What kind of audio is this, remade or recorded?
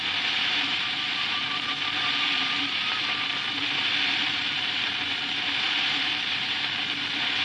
remade